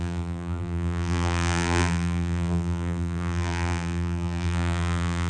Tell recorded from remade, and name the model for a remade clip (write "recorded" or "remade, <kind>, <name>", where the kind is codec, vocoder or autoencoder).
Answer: remade, vocoder, BigVGAN v2